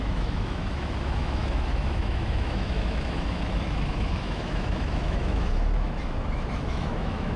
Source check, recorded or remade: remade